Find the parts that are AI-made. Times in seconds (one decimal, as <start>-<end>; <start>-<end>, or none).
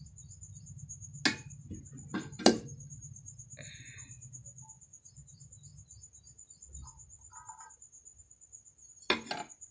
none